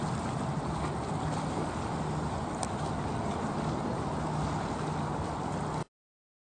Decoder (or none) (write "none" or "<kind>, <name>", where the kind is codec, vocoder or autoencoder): none